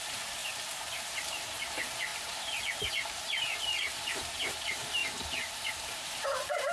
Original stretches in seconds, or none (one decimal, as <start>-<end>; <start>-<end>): 0.4-0.9; 5.0-5.8